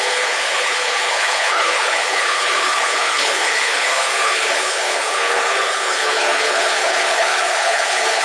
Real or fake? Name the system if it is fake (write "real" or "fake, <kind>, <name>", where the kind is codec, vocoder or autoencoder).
fake, codec, HILCodec